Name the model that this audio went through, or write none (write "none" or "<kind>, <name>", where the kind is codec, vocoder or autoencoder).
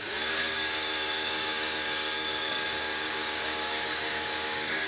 codec, DAC